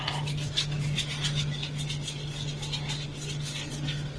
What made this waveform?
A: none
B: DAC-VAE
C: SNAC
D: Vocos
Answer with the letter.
A